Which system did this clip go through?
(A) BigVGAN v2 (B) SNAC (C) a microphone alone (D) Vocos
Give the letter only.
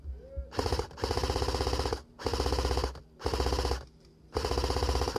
C